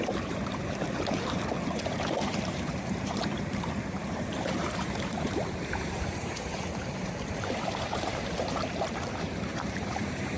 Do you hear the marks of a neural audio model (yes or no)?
yes